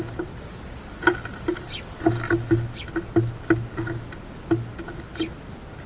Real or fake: real